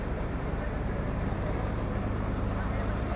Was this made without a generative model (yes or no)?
no